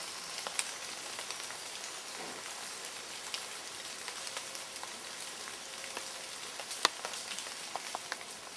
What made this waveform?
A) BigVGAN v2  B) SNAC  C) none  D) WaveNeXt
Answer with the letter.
C